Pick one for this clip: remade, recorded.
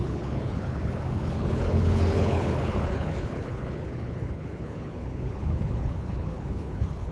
remade